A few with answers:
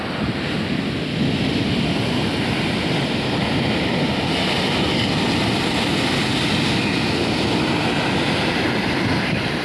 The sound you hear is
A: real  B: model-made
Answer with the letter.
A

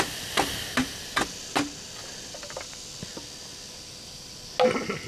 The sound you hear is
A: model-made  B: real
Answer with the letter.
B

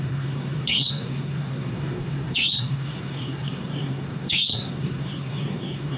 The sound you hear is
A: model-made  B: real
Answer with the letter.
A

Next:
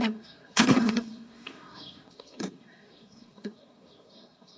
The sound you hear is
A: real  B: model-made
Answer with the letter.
B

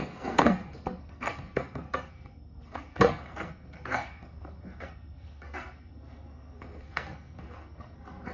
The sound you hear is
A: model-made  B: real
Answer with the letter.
A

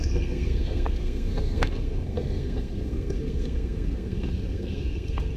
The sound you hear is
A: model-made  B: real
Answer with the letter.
A